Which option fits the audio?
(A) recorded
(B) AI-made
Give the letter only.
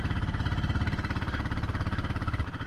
B